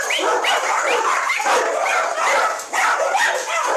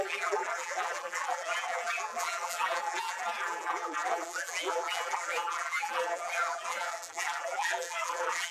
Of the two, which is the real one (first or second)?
first